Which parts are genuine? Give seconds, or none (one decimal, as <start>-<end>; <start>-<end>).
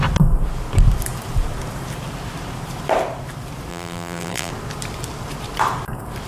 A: 0.0-3.7; 4.5-6.3